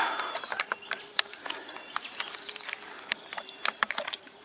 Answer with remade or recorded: remade